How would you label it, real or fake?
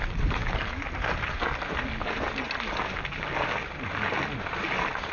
real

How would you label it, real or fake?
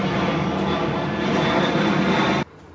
real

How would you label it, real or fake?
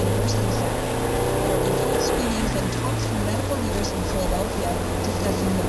real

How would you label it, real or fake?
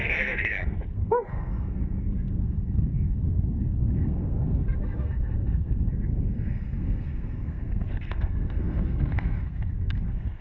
fake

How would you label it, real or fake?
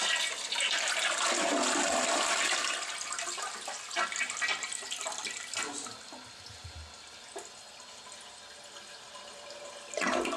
real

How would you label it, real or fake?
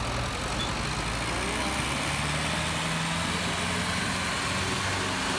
real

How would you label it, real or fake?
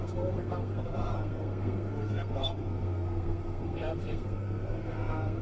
fake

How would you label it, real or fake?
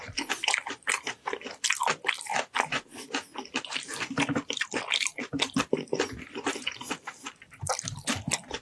real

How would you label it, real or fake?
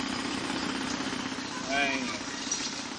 real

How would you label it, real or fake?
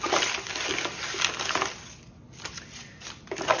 real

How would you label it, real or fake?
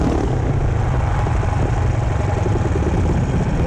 real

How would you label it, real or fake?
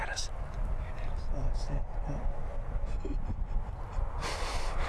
real